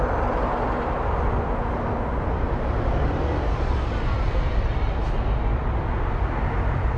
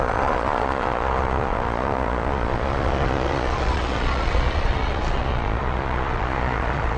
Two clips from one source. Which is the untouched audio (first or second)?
first